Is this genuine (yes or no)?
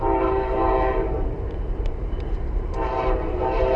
no